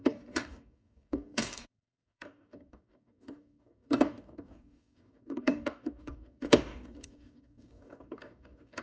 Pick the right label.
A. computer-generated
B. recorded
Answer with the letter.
A